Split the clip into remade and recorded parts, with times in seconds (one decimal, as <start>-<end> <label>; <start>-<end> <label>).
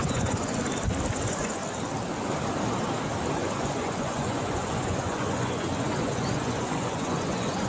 0.0-0.6 remade; 0.6-1.1 recorded; 1.1-1.6 remade; 1.6-3.3 recorded; 3.3-7.7 remade